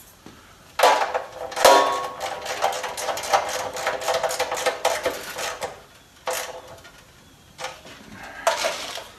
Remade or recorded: recorded